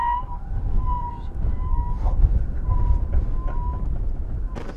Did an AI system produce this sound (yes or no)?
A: no